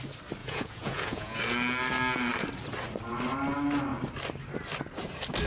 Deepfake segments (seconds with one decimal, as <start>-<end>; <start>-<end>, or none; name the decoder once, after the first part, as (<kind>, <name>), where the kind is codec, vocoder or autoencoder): 0.4-1.4 (vocoder, Vocos)